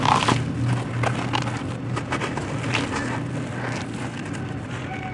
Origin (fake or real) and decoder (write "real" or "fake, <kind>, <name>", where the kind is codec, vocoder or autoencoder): real